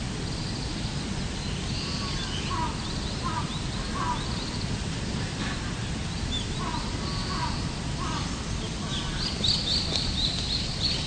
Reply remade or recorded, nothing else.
recorded